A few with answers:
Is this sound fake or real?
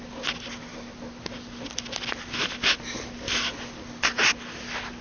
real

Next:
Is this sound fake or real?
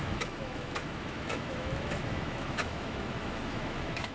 fake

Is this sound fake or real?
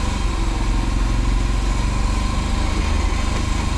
real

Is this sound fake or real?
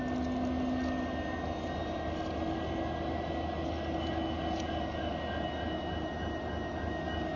real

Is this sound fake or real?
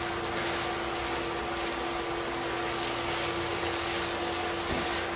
real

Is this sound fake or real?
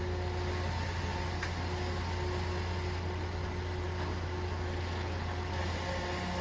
real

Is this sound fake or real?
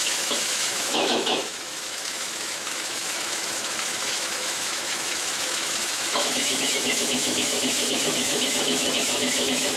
fake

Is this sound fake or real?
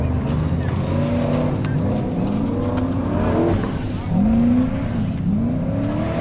real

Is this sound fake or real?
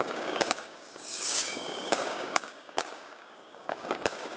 fake